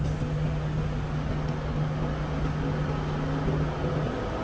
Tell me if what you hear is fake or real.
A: real